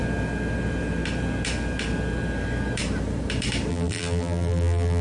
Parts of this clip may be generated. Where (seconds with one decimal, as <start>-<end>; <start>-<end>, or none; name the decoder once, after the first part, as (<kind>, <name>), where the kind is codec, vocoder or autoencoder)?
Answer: 3.7-5.0 (vocoder, BigVGAN v2)